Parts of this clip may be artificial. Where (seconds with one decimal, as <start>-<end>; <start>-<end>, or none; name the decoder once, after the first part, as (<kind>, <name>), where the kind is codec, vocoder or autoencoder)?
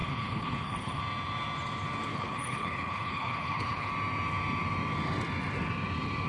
0.0-1.0 (codec, HILCodec); 2.1-3.9